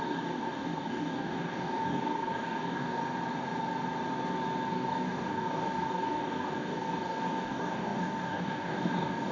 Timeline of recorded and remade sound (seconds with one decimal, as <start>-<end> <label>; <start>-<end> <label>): 0.0-3.0 remade; 3.0-4.7 recorded; 4.7-9.3 remade